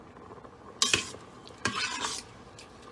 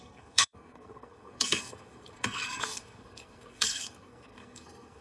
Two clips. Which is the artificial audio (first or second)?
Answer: second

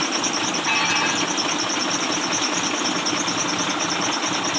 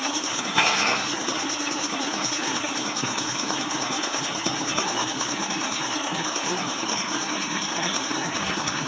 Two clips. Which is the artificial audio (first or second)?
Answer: second